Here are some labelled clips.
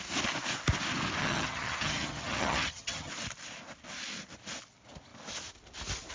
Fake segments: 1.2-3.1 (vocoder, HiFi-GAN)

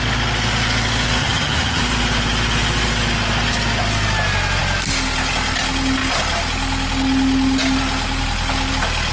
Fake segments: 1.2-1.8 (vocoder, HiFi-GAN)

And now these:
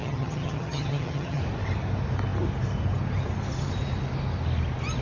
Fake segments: 0.0-1.4 (vocoder, HiFi-GAN)